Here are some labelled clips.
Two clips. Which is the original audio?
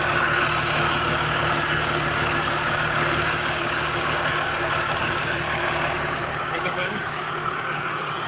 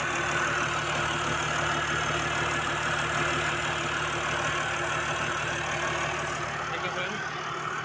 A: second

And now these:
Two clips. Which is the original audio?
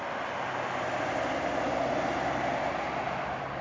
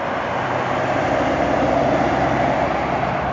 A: first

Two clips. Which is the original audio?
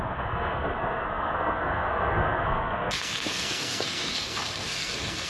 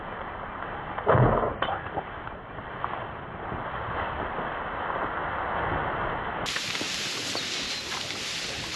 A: second